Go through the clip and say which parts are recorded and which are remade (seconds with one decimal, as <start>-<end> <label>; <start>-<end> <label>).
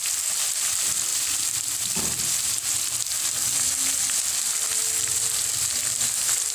0.0-1.1 recorded; 1.1-2.3 remade; 2.3-6.5 recorded